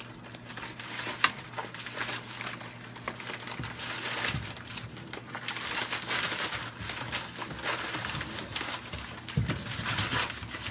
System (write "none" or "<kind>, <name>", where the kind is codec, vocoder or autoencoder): none